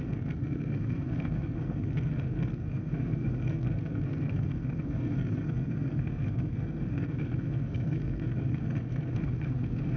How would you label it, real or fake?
fake